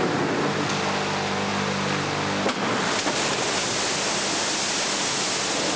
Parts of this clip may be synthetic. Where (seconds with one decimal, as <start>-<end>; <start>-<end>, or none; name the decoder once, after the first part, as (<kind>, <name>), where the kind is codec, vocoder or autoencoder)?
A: none